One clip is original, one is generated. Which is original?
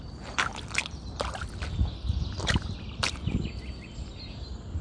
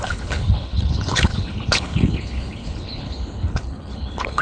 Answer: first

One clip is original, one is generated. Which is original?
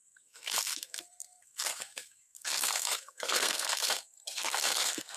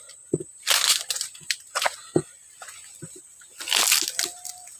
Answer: second